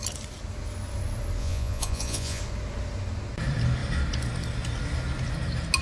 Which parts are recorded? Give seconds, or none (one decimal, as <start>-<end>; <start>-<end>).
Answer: 0.0-1.4; 2.4-5.8